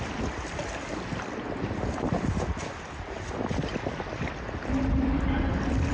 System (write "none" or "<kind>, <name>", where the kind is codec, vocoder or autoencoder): none